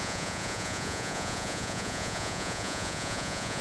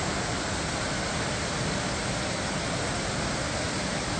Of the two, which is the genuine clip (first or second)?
second